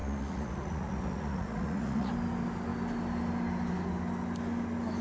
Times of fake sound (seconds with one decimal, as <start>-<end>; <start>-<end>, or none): 0.0-2.1